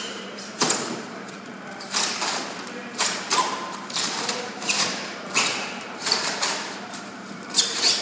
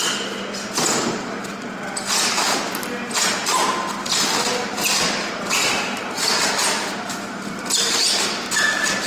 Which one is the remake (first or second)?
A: first